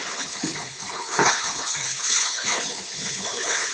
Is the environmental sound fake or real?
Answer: fake